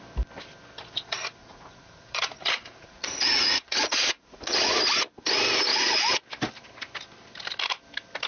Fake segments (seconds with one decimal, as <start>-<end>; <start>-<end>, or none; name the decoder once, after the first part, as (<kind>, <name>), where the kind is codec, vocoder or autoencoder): 1.4-4.8 (vocoder, Vocos); 5.7-6.2